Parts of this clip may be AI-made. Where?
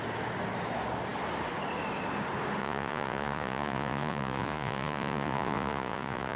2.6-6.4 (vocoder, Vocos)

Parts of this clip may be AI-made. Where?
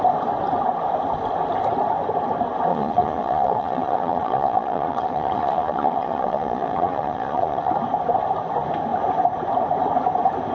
2.7-7.7 (vocoder, Vocos)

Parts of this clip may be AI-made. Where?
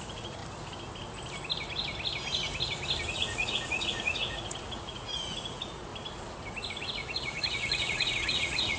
0.0-0.4 (vocoder, Vocos); 3.1-5.9; 6.7-8.8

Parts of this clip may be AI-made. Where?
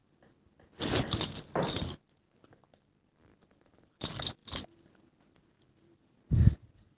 none